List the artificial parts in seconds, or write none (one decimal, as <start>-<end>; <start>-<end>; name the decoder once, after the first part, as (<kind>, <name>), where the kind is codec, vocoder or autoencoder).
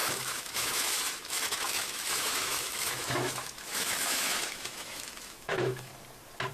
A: 0.0-5.9 (autoencoder, DAC-VAE)